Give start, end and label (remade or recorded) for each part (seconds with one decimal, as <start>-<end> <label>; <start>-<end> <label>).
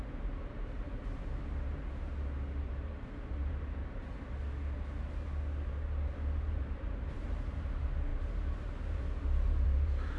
0.0-1.3 remade; 1.3-2.6 recorded; 2.6-3.8 remade; 3.8-6.6 recorded; 6.6-10.2 remade